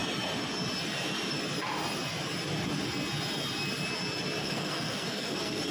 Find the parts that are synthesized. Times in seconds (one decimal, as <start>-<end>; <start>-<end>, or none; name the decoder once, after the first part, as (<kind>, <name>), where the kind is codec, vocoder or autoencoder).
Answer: 4.4-5.7 (codec, SNAC)